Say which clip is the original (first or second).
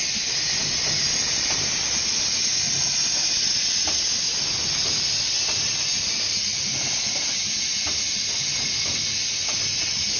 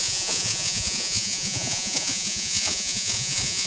first